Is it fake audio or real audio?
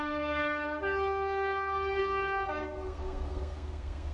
fake